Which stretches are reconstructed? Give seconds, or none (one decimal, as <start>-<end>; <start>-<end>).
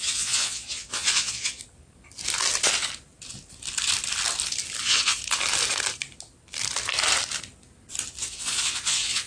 0.0-1.6; 4.8-5.2; 8.2-9.3